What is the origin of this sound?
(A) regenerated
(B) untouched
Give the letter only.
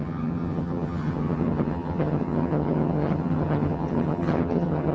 A